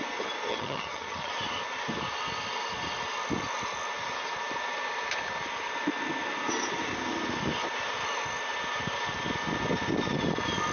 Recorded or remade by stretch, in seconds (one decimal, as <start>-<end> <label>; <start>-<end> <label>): 0.0-0.5 recorded; 0.5-1.3 remade; 1.3-10.7 recorded